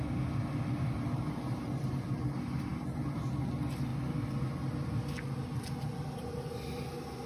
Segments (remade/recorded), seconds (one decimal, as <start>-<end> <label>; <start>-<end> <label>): 0.0-7.3 recorded